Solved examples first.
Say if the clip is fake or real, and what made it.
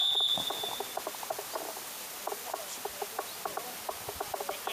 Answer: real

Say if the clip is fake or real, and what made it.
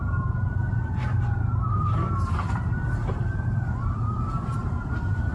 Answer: fake, vocoder, BigVGAN v2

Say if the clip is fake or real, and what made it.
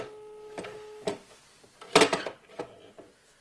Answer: real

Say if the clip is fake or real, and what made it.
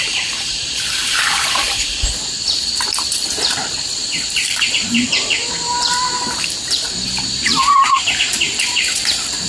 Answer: fake, vocoder, BigVGAN v2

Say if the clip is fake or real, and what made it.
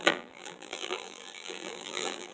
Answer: fake, vocoder, BigVGAN v2